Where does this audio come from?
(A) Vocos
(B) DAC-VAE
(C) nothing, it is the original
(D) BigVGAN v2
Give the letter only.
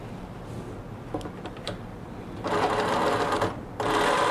C